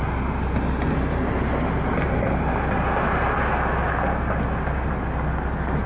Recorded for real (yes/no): yes